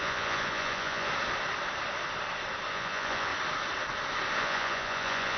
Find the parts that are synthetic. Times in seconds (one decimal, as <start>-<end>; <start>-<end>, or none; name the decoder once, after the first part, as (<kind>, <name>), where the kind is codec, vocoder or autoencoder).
0.0-1.1 (vocoder, Vocos); 2.7-3.3; 4.4-5.4